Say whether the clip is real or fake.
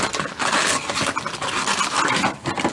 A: real